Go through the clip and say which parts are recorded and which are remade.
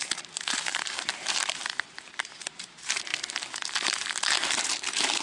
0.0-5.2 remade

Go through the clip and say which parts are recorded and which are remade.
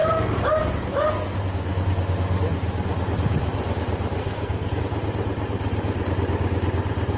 0.0-4.2 recorded; 4.2-4.8 remade; 4.8-7.2 recorded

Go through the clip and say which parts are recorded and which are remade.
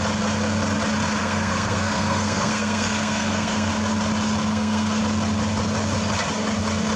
0.0-1.2 recorded; 1.2-3.7 remade; 3.7-4.5 recorded; 4.5-5.0 remade; 5.0-7.0 recorded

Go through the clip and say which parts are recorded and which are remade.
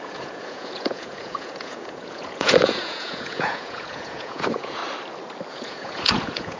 0.0-4.8 remade; 4.8-5.5 recorded; 5.5-6.6 remade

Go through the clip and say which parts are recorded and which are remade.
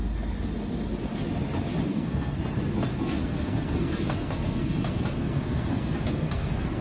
0.0-1.9 recorded; 1.9-2.4 remade; 2.4-2.9 recorded; 2.9-6.8 remade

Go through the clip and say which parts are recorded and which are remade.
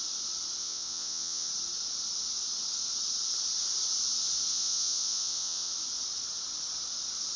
0.0-0.6 recorded; 0.6-1.5 remade; 1.5-4.5 recorded; 4.5-5.7 remade; 5.7-7.4 recorded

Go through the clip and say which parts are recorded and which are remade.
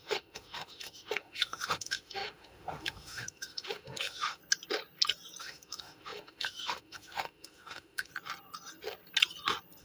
0.0-4.4 remade; 4.4-5.4 recorded; 5.4-8.1 remade; 8.1-9.8 recorded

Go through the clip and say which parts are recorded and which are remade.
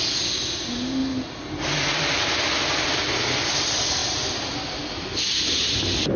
0.0-6.2 recorded